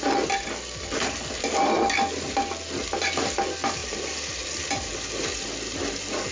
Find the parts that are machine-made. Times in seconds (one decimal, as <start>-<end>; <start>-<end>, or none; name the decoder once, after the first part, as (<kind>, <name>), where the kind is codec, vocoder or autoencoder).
none